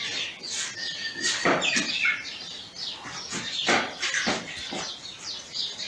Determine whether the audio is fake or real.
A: real